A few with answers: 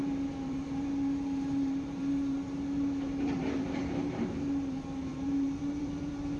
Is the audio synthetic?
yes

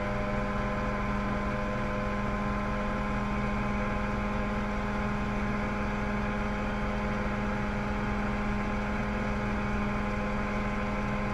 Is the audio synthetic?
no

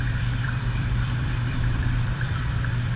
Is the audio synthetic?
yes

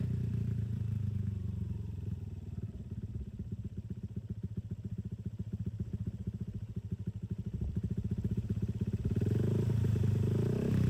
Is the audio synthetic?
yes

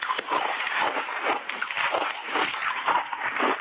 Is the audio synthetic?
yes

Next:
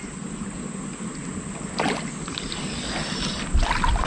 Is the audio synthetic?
no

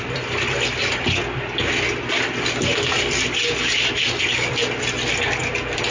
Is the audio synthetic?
no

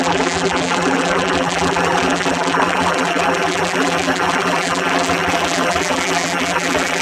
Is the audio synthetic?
yes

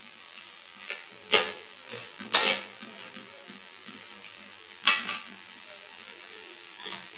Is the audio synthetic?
yes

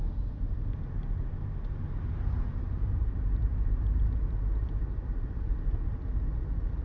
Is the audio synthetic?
yes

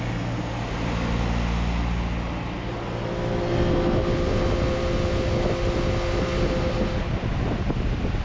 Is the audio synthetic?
no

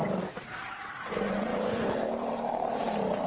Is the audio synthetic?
yes